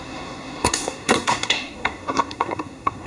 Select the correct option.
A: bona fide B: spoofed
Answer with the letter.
B